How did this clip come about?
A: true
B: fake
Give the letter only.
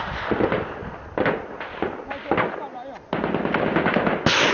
A